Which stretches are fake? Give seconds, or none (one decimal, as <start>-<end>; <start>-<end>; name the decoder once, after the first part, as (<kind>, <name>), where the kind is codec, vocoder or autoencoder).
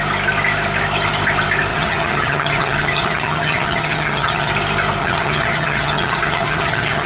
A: 1.7-4.5 (vocoder, HiFi-GAN); 5.0-7.1